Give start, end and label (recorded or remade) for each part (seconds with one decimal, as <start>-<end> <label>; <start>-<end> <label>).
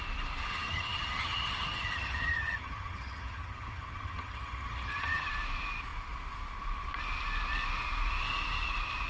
0.0-0.5 recorded; 0.5-5.3 remade; 5.3-9.1 recorded